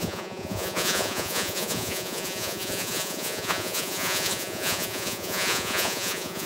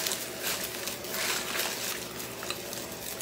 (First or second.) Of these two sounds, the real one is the second